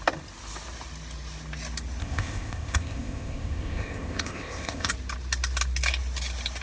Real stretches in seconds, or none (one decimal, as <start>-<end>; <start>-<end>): 0.0-2.0; 4.9-6.6